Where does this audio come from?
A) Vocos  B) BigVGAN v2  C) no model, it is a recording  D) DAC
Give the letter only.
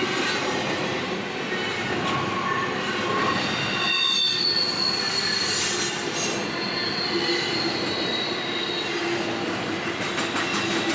C